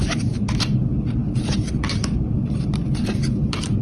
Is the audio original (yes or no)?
no